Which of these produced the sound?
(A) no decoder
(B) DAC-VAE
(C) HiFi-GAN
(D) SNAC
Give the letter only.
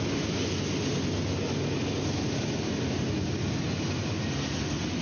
A